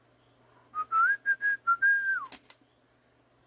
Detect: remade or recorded recorded